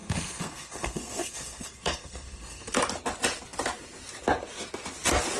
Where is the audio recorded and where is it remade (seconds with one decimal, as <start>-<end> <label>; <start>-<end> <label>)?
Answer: 0.0-2.8 remade; 2.8-5.4 recorded